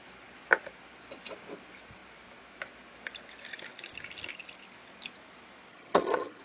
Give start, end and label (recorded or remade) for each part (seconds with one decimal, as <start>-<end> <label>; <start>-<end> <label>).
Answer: 0.0-5.7 recorded; 5.7-6.4 remade